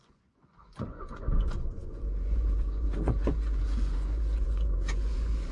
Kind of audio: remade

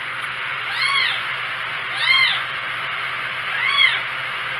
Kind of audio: remade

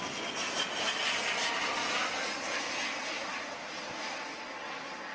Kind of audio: recorded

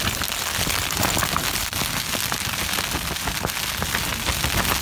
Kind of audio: recorded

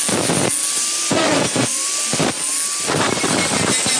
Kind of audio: recorded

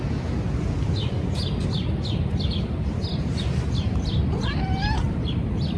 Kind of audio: recorded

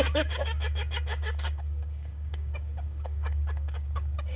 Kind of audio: remade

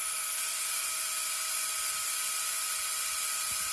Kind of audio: recorded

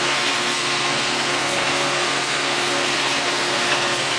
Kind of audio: remade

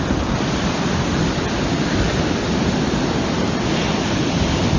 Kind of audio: recorded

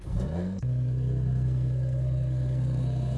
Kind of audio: remade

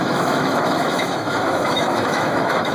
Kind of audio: remade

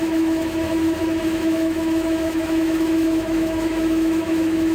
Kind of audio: remade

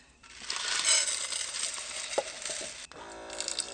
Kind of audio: recorded